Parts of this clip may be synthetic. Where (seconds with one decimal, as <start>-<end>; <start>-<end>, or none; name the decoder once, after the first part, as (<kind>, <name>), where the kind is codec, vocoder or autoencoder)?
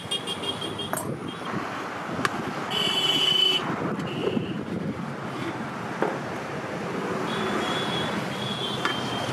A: 4.2-8.5 (vocoder, BigVGAN v2)